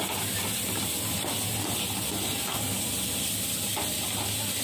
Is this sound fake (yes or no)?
no